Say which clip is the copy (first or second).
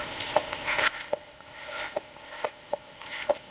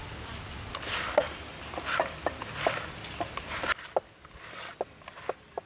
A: first